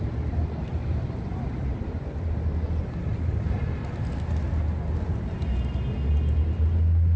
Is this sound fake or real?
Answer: real